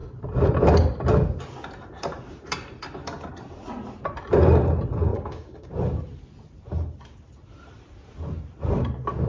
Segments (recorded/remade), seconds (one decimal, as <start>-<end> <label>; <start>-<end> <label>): 0.0-5.1 recorded; 5.1-5.7 remade; 5.7-9.3 recorded